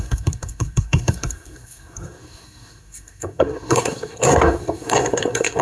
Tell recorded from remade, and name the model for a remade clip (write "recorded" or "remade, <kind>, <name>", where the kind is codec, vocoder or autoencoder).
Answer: remade, codec, SNAC